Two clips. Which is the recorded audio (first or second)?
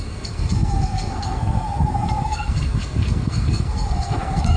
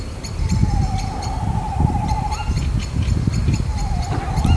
second